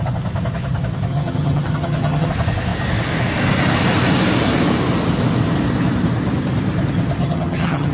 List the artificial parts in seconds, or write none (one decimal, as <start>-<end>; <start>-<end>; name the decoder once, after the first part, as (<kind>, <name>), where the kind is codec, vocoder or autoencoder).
1.1-2.3 (vocoder, HiFi-GAN); 7.2-7.9

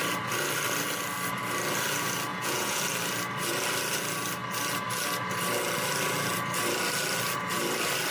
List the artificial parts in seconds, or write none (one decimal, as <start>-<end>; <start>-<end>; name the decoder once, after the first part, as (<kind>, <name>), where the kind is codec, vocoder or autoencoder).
2.3-2.8 (vocoder, Vocos)